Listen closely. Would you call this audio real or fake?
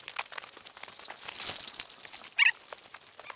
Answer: real